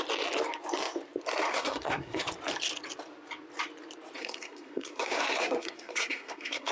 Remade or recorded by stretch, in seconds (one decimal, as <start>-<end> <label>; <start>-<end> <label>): 0.0-1.5 recorded; 1.5-2.2 remade; 2.2-4.2 recorded; 4.2-6.7 remade